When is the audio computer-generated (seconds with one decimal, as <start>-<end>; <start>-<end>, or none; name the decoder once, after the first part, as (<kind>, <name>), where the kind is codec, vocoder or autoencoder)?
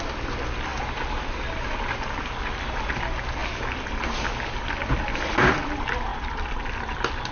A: none